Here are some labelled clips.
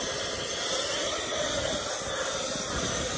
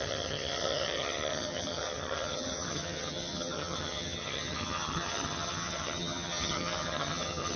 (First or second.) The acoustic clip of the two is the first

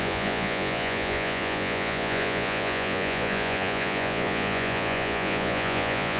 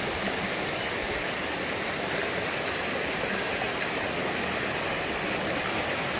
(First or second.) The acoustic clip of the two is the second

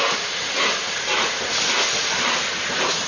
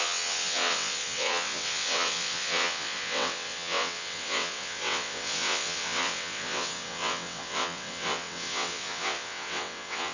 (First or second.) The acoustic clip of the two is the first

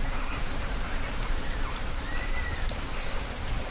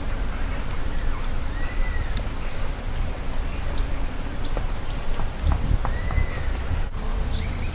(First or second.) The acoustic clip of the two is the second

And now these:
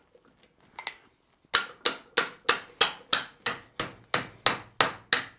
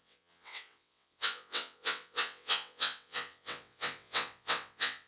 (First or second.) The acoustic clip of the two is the first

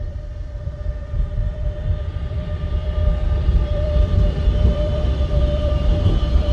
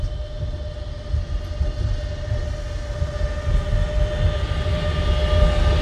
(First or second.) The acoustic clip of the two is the second